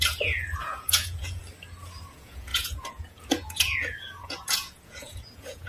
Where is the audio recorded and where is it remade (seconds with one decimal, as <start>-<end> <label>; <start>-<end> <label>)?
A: 0.0-1.4 remade; 1.4-2.1 recorded; 2.1-5.7 remade